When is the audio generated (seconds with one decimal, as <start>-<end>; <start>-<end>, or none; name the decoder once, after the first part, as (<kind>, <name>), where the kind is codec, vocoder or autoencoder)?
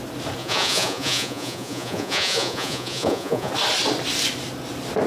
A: 0.4-3.5 (vocoder, Vocos)